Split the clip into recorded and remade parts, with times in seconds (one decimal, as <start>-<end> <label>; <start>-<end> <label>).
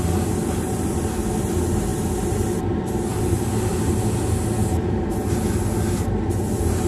0.0-3.1 recorded; 3.1-3.9 remade; 3.9-6.9 recorded